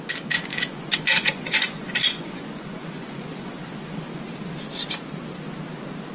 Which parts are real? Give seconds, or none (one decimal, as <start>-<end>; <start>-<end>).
0.0-0.5; 4.2-6.1